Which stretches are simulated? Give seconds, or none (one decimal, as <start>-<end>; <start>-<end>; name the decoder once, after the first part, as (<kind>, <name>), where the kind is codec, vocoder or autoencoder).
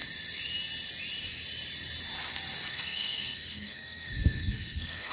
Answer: 2.7-5.1 (codec, SNAC)